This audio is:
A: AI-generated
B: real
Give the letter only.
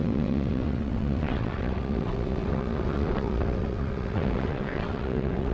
A